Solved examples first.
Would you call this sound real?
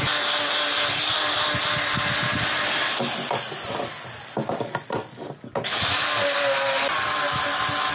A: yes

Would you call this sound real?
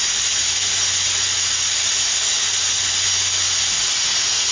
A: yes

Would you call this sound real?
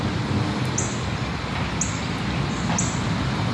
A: yes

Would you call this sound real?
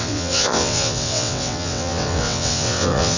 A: no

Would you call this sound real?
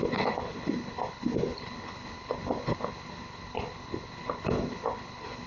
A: no